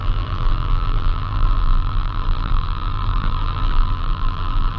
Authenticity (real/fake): fake